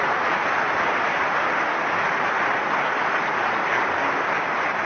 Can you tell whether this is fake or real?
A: real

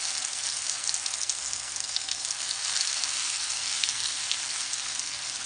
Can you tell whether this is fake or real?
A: fake